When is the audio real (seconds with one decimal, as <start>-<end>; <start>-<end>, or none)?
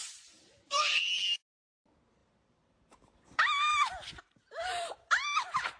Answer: 1.0-2.2